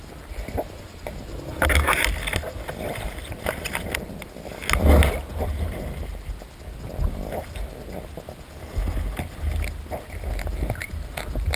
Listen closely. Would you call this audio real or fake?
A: real